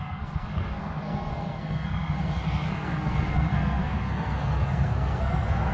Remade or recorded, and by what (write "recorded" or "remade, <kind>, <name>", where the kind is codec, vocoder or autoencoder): remade, codec, SNAC